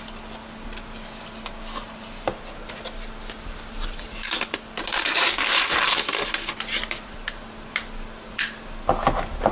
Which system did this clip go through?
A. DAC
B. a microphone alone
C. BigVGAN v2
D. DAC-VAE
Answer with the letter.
C